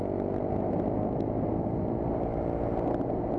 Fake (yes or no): no